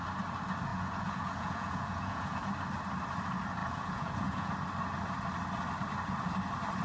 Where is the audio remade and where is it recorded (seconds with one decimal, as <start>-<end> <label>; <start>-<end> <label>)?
0.0-0.7 recorded; 0.7-2.5 remade; 2.5-3.6 recorded; 3.6-4.5 remade; 4.5-6.8 recorded